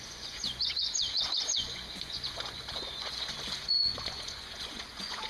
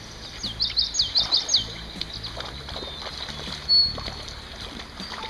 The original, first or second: second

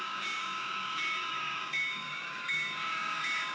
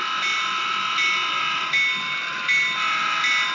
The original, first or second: second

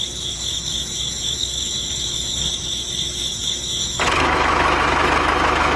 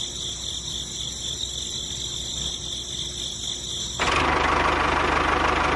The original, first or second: second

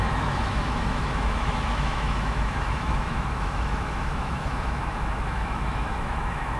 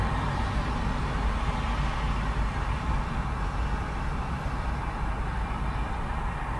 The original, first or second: second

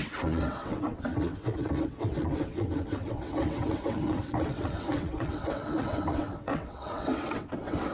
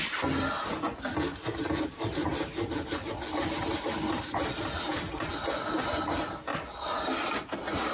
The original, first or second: second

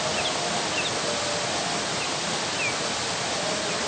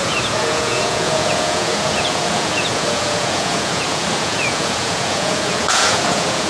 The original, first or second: first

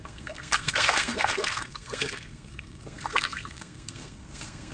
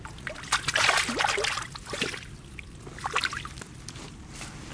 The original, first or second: second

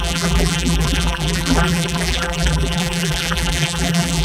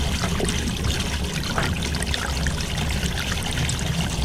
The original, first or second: second